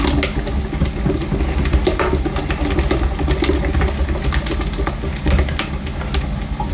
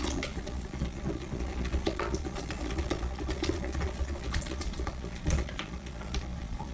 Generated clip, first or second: second